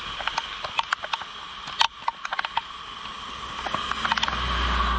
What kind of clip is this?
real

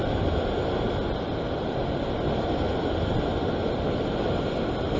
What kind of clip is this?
real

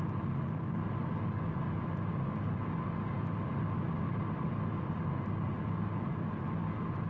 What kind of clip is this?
real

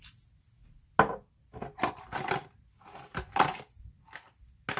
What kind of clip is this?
real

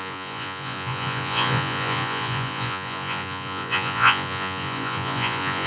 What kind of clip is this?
fake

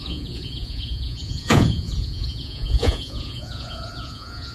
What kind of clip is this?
fake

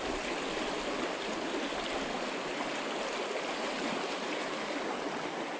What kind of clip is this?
real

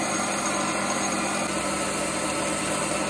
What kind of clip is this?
real